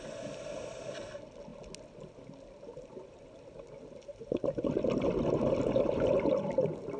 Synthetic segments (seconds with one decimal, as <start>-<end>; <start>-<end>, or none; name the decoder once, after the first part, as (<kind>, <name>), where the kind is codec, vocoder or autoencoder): none

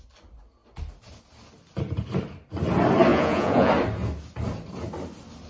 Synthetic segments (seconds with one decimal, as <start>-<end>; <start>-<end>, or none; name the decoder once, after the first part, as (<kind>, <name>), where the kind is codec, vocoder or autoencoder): 3.1-3.7 (vocoder, Vocos)

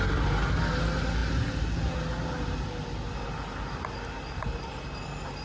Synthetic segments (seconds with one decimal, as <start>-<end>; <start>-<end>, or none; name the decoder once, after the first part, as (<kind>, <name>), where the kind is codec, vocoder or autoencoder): none